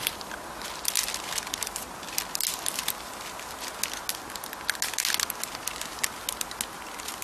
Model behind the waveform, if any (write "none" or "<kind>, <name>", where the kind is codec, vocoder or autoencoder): none